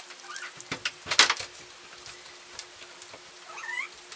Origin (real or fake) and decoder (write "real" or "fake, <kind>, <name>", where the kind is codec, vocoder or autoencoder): real